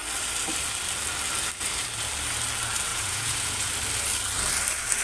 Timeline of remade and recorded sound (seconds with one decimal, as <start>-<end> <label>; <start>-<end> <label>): 0.0-2.9 recorded; 2.9-3.7 remade; 3.7-5.0 recorded